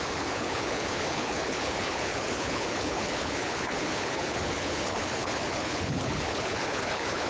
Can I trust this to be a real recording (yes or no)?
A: no